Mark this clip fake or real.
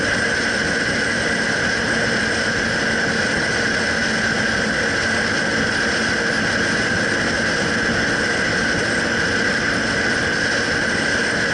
real